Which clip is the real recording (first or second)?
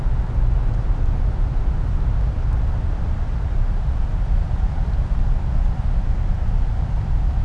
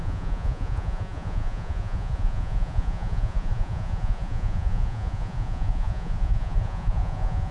first